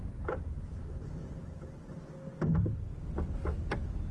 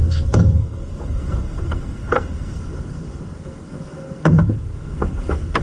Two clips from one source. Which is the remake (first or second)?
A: second